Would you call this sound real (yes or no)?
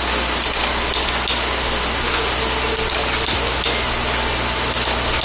yes